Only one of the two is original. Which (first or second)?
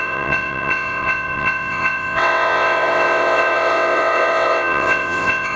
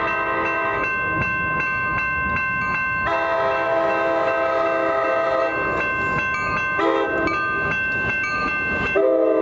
second